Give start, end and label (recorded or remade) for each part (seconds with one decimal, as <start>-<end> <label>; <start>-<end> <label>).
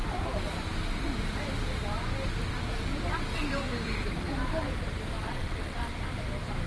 0.0-5.2 recorded; 5.2-5.9 remade; 5.9-6.7 recorded